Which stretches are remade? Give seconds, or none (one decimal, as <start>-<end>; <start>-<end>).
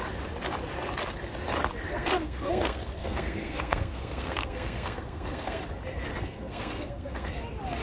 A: 1.9-5.6; 6.1-7.3